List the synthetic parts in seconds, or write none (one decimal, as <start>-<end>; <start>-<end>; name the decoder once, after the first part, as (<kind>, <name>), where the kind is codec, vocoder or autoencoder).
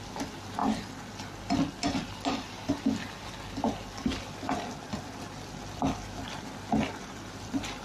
none